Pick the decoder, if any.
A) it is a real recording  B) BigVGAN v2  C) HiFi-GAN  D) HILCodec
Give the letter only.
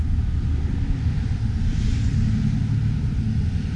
A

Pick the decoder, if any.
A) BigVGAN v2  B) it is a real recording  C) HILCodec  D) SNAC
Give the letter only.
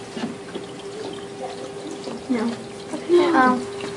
B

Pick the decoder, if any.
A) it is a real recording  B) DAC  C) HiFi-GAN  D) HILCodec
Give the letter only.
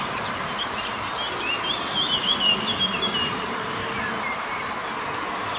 A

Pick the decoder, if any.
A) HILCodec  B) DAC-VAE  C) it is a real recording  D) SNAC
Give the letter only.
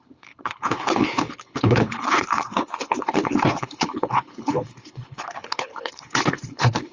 A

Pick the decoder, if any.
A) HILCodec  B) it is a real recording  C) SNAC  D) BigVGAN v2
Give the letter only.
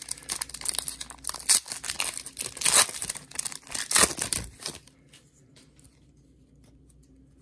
B